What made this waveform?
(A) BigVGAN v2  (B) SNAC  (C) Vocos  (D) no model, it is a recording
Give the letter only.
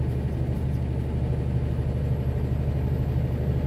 D